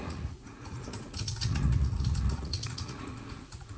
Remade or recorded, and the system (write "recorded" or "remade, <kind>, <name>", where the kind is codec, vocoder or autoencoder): remade, vocoder, Vocos